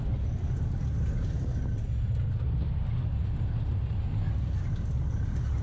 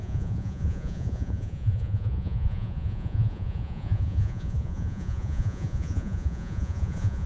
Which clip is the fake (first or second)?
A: second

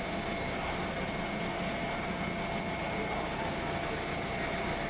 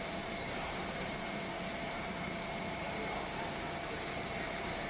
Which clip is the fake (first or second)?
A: second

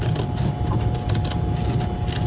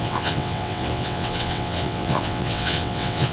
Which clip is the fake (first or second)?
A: second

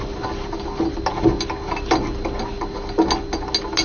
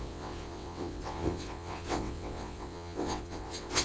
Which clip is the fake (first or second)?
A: second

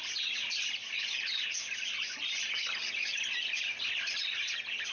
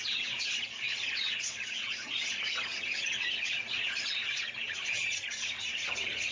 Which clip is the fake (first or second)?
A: second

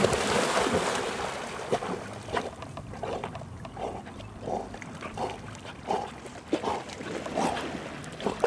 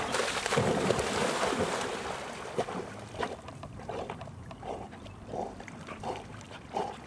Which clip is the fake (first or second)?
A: second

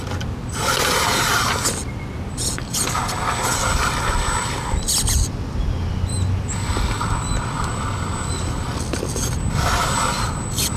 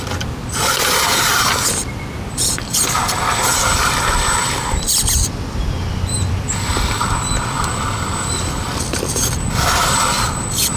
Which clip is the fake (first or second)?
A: second